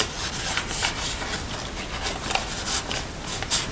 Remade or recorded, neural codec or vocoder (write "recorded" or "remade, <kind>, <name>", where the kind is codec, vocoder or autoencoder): recorded